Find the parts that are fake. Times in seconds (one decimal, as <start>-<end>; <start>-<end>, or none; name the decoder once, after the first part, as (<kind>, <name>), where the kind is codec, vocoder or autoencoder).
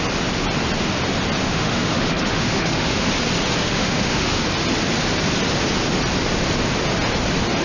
1.4-3.1 (autoencoder, DAC-VAE); 3.6-4.4